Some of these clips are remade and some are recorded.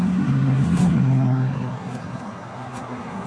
remade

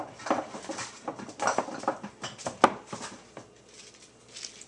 recorded